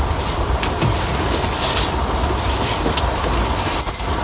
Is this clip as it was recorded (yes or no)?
yes